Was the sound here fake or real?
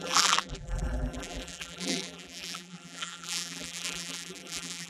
fake